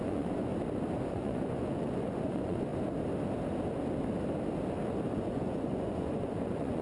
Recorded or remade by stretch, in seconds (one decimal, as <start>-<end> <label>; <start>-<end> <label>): 0.0-0.5 remade; 0.5-1.1 recorded; 1.1-2.7 remade; 2.7-5.1 recorded; 5.1-6.8 remade